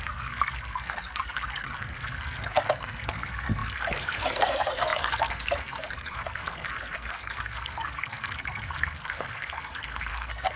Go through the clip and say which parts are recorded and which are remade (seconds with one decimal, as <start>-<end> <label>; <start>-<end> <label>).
0.0-10.6 remade